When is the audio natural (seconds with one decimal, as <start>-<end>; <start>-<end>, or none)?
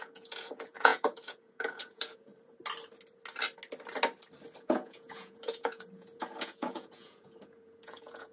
2.3-4.6